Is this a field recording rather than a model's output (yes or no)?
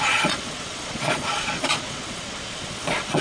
no